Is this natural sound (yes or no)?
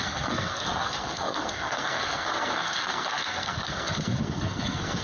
no